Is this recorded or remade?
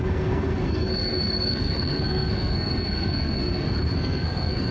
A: remade